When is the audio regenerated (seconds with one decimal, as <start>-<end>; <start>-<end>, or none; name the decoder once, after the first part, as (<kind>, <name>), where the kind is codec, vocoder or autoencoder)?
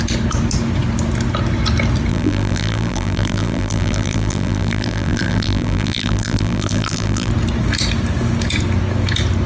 2.1-7.3 (vocoder, BigVGAN v2)